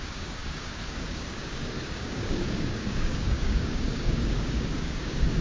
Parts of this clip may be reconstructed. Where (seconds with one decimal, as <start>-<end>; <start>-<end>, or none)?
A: 0.0-5.4